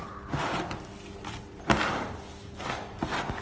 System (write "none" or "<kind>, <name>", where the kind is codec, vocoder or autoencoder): none